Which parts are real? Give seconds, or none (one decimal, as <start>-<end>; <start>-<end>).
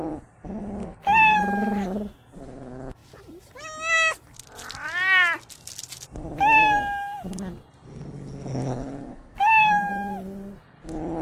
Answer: 0.0-0.8; 1.4-9.1; 9.9-11.2